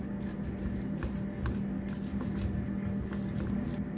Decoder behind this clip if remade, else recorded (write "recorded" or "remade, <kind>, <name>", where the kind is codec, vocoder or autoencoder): recorded